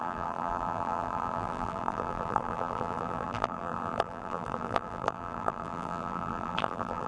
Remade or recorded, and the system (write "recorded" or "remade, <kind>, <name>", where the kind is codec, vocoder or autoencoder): remade, vocoder, BigVGAN v2